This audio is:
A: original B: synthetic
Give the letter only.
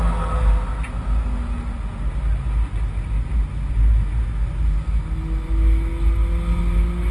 A